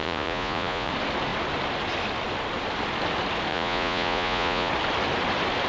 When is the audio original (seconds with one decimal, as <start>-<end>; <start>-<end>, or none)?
0.9-3.5; 4.7-5.7